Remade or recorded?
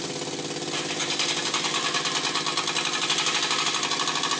recorded